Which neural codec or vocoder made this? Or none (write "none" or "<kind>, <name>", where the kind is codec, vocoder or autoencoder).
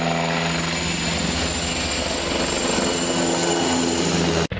none